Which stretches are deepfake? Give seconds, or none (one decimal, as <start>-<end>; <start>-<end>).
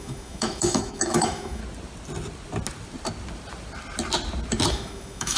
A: 0.0-1.6; 4.7-5.4